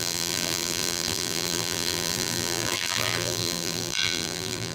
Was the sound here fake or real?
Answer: fake